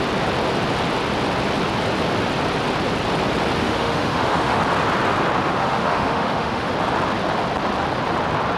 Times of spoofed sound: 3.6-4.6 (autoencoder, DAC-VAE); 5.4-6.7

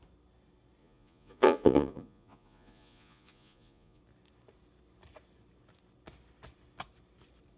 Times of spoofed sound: 0.8-4.0 (vocoder, Vocos)

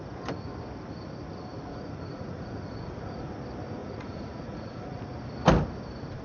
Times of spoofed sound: 1.7-3.3 (vocoder, Vocos); 3.8-5.0

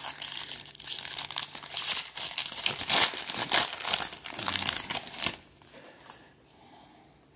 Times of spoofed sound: none

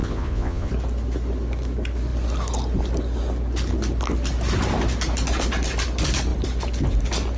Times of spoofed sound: 0.0-0.7 (vocoder, Vocos)

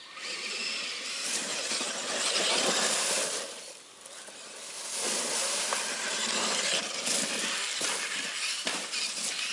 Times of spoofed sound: none

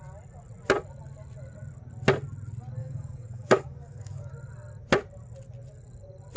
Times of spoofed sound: 2.8-4.3 (codec, DAC)

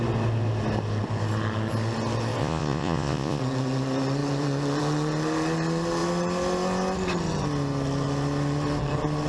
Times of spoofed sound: 2.4-3.4 (vocoder, Vocos)